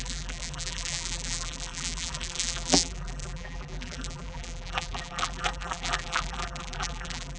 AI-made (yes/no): yes